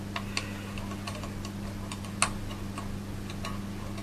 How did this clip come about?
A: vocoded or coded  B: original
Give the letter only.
B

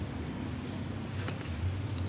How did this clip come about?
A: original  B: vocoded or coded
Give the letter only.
A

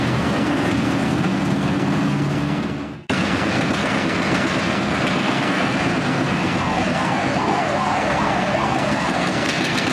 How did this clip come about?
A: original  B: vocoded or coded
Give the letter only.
B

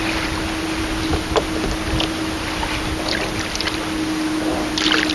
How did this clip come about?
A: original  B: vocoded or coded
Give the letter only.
A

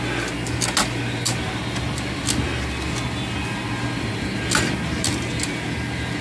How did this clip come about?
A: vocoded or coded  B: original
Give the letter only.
B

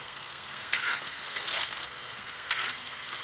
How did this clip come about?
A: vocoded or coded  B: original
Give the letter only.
A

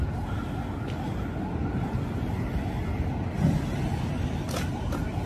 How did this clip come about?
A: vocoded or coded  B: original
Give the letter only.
B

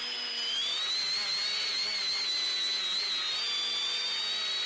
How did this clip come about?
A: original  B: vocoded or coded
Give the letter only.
A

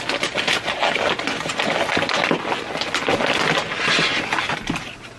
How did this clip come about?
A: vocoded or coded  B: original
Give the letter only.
B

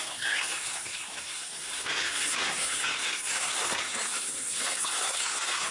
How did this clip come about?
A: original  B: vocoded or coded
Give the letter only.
B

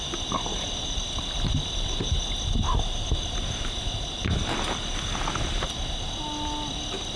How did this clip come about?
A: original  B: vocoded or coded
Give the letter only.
A